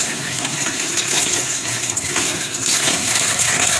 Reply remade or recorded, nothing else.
remade